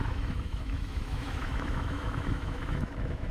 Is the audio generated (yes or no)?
yes